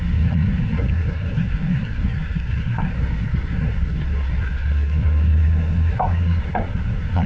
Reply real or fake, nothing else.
fake